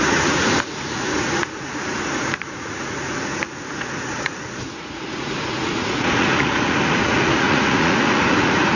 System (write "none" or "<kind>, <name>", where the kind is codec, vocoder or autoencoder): vocoder, Vocos